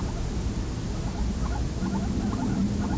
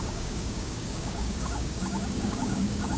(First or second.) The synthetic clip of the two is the second